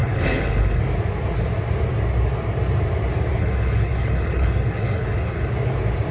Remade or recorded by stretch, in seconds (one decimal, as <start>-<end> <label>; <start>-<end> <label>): 0.0-0.8 remade; 0.8-3.4 recorded; 3.4-5.5 remade; 5.5-6.1 recorded